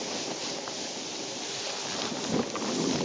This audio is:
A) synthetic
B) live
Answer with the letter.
B